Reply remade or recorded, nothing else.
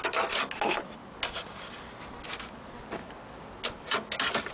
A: recorded